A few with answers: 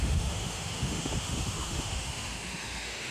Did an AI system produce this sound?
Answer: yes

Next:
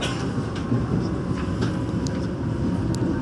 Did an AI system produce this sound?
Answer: no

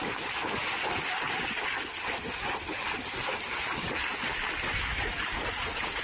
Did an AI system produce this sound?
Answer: no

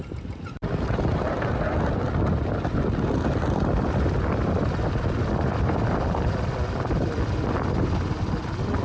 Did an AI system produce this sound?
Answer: yes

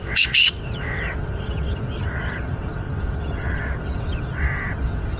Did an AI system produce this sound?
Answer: yes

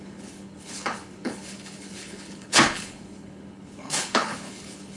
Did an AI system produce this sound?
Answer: yes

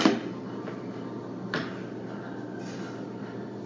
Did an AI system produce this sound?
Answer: no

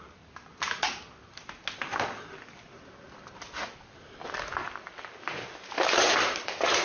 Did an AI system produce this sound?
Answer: no